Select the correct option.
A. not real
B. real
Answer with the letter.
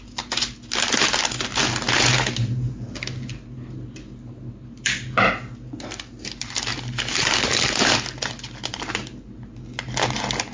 B